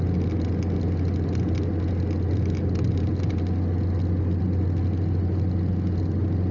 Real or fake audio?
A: real